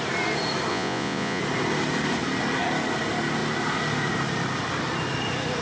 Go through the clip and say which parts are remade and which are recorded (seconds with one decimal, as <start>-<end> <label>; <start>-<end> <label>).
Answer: 0.0-0.7 recorded; 0.7-1.4 remade; 1.4-5.6 recorded

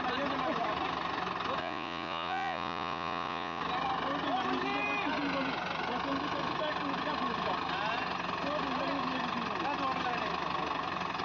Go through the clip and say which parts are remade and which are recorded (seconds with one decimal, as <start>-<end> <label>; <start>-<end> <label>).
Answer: 0.0-1.6 recorded; 1.6-3.6 remade; 3.6-11.2 recorded